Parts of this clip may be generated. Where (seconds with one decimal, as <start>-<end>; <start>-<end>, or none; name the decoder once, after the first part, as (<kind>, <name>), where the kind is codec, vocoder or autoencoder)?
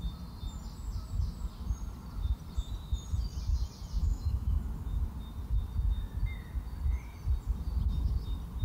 4.0-4.6 (autoencoder, DAC-VAE)